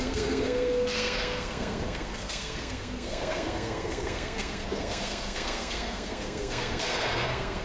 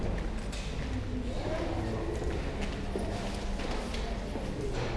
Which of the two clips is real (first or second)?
second